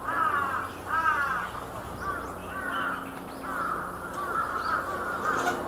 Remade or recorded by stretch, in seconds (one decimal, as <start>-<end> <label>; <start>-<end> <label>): 0.0-0.7 recorded; 0.7-1.3 remade; 1.3-5.7 recorded